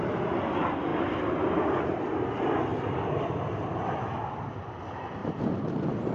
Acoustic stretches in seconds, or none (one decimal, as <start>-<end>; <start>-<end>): 0.0-5.2